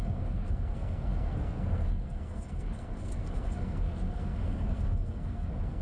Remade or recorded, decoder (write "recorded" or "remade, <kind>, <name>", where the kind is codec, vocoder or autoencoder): remade, codec, SNAC